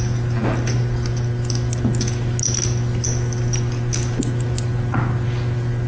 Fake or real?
real